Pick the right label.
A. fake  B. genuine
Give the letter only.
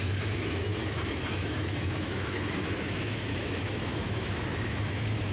A